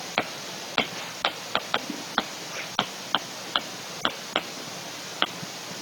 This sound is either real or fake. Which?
real